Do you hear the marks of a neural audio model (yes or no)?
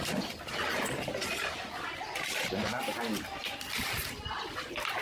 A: no